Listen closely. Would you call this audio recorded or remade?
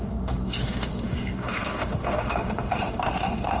remade